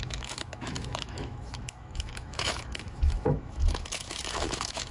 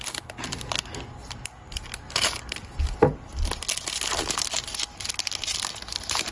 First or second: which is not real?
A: first